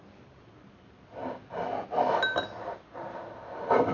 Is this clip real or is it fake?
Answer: real